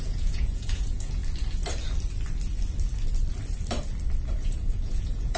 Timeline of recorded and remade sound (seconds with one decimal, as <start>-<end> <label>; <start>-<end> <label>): 0.0-1.2 remade; 1.2-4.4 recorded; 4.4-5.4 remade